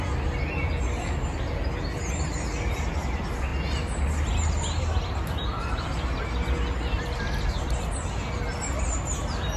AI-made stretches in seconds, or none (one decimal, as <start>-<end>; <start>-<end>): none